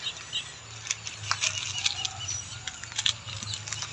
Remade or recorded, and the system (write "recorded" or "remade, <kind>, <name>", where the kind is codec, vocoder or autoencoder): recorded